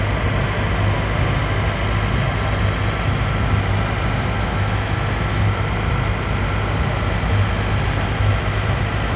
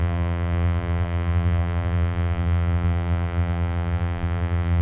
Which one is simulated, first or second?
second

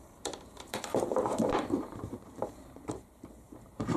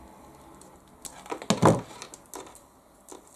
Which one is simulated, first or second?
first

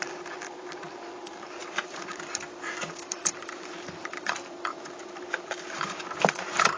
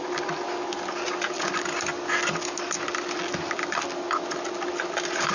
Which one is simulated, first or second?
first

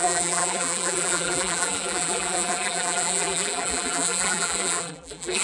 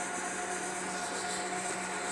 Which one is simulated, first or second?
first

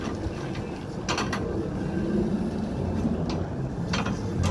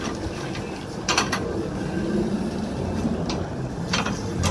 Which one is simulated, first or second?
second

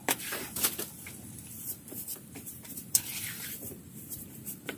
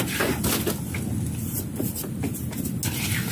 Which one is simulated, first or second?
first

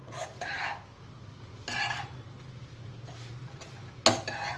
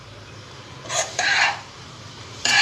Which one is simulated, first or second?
second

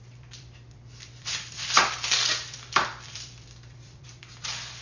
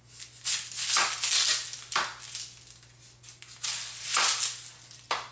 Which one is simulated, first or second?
first